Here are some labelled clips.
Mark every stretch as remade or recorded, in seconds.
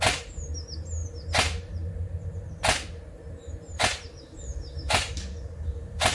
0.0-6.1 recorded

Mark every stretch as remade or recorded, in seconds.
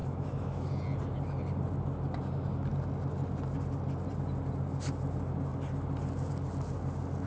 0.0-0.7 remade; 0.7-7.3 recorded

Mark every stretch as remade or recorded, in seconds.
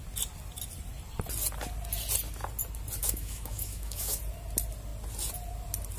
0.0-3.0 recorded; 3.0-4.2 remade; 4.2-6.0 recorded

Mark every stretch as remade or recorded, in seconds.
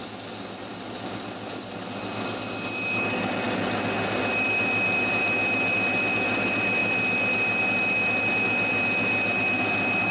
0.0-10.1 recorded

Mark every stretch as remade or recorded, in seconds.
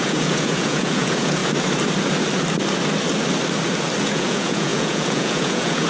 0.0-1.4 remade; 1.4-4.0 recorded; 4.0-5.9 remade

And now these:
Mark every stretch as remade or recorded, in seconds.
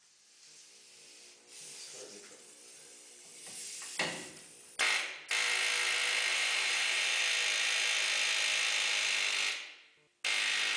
0.0-6.3 recorded; 6.3-7.2 remade; 7.2-10.8 recorded